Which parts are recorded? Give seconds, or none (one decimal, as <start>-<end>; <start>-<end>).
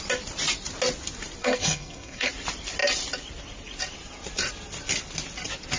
0.0-1.4; 2.3-5.8